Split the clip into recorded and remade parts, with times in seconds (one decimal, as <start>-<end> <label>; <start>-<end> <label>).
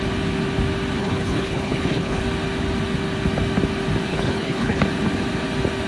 0.0-1.0 recorded; 1.0-2.2 remade; 2.2-4.1 recorded; 4.1-4.8 remade; 4.8-5.9 recorded